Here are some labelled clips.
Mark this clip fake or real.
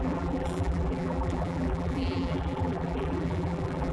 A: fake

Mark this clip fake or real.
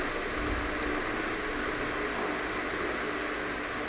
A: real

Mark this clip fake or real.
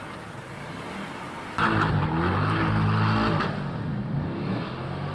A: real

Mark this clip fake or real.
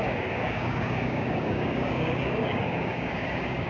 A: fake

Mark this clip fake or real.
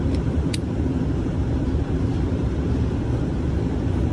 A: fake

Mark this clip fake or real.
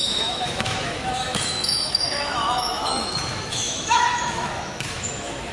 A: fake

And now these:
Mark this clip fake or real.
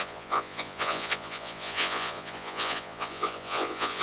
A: fake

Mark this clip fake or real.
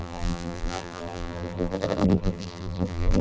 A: fake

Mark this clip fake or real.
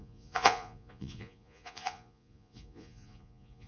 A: fake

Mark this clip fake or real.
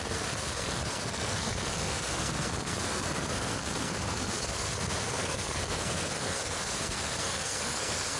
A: fake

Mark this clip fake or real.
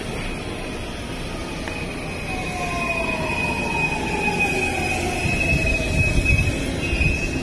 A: real